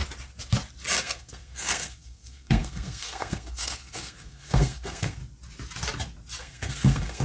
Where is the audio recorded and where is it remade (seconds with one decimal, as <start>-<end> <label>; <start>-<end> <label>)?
0.0-1.0 recorded; 1.0-5.2 remade; 5.2-6.4 recorded; 6.4-7.2 remade

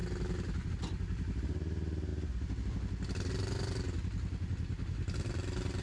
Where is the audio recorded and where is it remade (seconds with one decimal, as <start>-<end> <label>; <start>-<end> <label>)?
0.0-0.7 recorded; 0.7-2.1 remade; 2.1-3.3 recorded; 3.3-5.8 remade